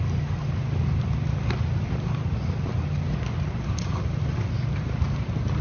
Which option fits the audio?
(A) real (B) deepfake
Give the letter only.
A